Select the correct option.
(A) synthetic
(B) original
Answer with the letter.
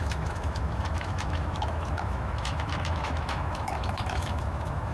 A